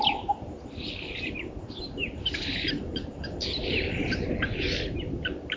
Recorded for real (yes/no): no